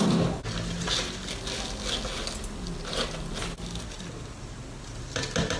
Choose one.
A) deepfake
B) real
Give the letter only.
B